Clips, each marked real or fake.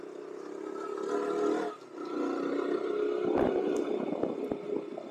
real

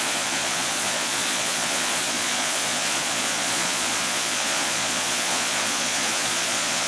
fake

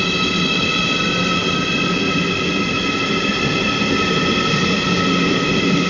real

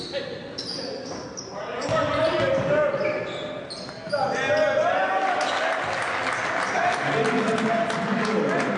real